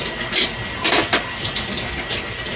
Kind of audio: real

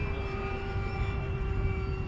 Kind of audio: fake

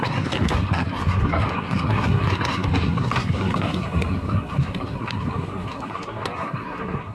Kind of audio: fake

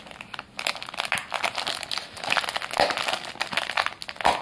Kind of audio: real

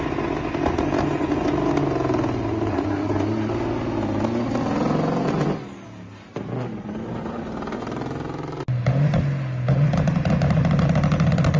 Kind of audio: real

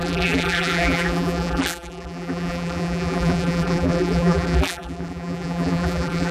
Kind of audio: fake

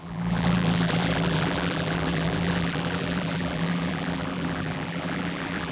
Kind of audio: fake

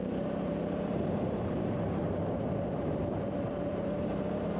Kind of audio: fake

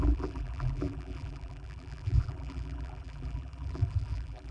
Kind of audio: fake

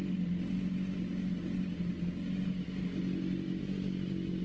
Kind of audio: real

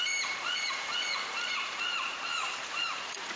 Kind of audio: fake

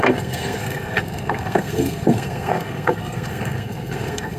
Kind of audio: fake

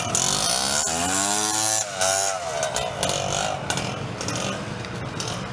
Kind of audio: real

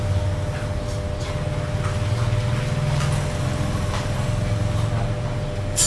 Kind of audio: real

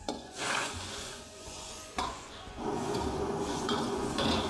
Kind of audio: fake